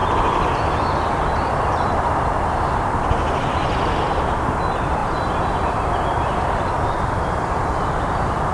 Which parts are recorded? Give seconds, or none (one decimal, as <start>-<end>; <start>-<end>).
3.4-5.0; 7.1-8.5